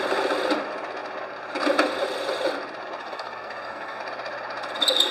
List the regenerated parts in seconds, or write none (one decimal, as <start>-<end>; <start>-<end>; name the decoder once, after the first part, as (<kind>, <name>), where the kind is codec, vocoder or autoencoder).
3.0-4.0 (codec, SNAC)